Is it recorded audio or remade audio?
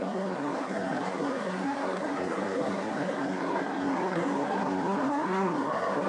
remade